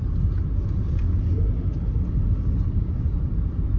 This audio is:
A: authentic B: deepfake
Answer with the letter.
A